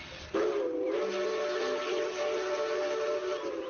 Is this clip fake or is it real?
real